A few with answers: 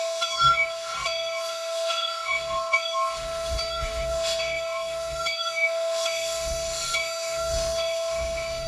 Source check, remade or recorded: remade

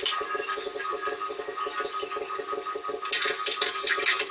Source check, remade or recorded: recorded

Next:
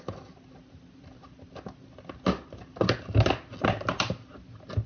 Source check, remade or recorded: recorded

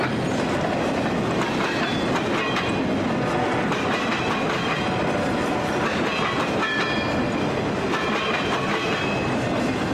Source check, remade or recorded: recorded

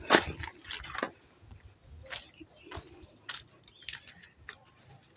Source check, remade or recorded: recorded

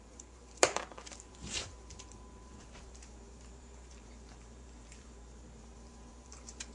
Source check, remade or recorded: remade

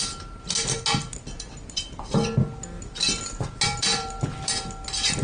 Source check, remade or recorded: recorded